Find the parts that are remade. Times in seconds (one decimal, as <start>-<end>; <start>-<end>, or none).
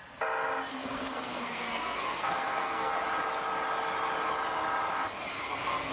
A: 0.7-2.9; 5.4-5.9